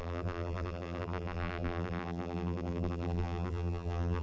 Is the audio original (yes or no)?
no